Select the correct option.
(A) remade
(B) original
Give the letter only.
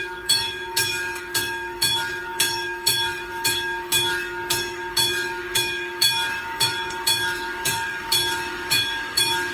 A